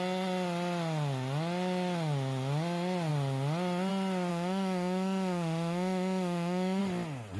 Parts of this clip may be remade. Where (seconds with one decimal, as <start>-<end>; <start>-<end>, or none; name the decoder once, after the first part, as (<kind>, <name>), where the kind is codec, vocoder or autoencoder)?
4.3-6.8 (autoencoder, DAC-VAE)